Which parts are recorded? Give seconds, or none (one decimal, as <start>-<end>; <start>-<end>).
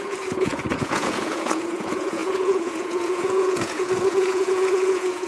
none